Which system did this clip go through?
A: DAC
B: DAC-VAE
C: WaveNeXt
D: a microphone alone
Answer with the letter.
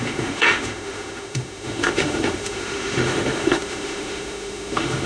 B